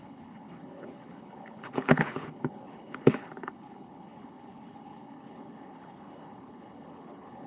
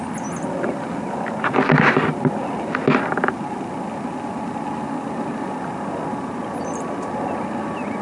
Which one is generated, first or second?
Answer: first